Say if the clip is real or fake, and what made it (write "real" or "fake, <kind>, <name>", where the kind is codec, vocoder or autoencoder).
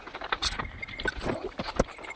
real